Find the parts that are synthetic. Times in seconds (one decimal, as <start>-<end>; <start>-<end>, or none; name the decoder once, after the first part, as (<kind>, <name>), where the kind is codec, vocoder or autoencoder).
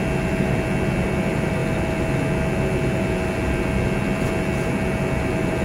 none